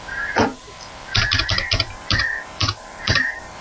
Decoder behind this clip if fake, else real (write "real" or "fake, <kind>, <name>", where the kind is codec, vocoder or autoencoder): fake, vocoder, BigVGAN v2